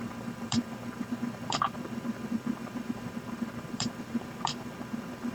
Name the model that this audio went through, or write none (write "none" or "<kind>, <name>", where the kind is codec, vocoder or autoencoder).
vocoder, BigVGAN v2